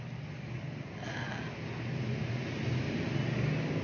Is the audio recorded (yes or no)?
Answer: yes